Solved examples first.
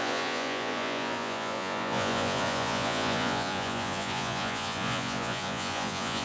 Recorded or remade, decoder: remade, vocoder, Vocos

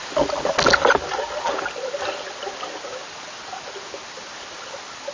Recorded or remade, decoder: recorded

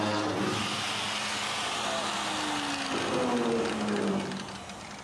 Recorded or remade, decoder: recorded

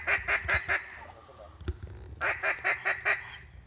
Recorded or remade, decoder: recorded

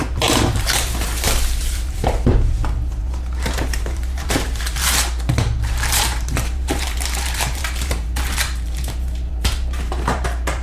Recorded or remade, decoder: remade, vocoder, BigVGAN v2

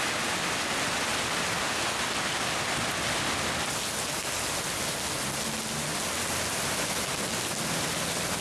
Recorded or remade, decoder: recorded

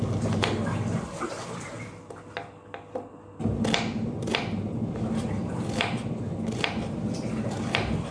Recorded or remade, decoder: recorded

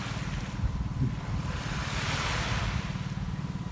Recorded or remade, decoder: recorded